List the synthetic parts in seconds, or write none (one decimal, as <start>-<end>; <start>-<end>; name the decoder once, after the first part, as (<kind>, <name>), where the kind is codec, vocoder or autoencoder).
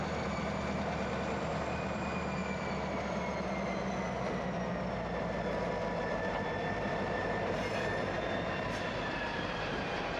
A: 0.0-2.4 (vocoder, BigVGAN v2); 6.0-10.2